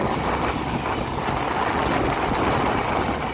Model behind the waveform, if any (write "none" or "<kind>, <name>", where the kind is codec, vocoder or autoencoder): none